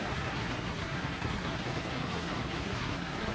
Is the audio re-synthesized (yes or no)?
yes